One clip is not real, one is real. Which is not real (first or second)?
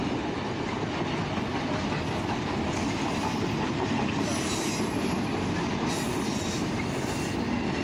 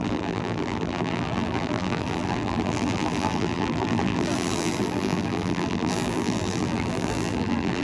second